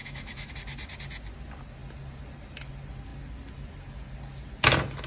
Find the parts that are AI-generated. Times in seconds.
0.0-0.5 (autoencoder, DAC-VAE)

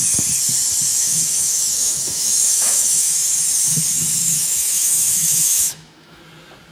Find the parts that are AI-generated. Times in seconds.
0.9-3.3 (autoencoder, DAC-VAE); 4.2-6.2

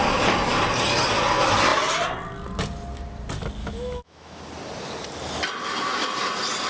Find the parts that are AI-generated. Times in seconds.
3.6-4.4 (autoencoder, DAC-VAE)

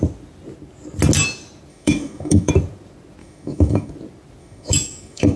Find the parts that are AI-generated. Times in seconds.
1.7-2.5 (autoencoder, DAC-VAE); 3.2-3.9; 4.4-5.4

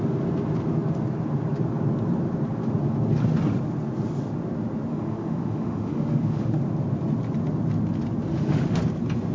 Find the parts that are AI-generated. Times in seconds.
4.9-6.6 (autoencoder, DAC-VAE); 8.3-8.8